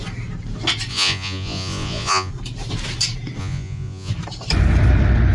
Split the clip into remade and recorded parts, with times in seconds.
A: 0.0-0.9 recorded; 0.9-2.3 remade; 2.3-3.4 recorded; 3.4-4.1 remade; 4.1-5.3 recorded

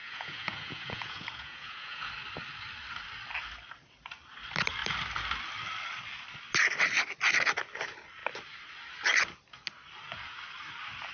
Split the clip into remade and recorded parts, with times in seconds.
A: 0.0-2.1 remade; 2.1-11.1 recorded

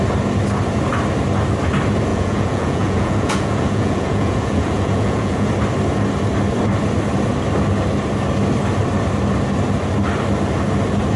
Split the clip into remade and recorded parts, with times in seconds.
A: 0.0-2.1 recorded; 2.1-5.5 remade; 5.5-11.2 recorded

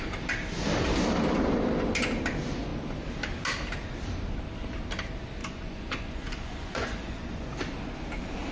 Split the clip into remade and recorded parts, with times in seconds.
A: 0.0-5.4 recorded; 5.4-7.6 remade; 7.6-8.5 recorded

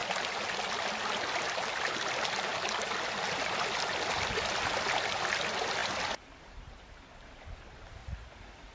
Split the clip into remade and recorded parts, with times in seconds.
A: 0.0-8.0 recorded; 8.0-8.7 remade

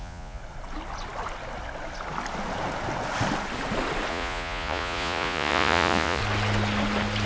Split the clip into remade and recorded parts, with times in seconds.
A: 0.0-0.4 remade; 0.4-4.1 recorded; 4.1-6.2 remade; 6.2-7.3 recorded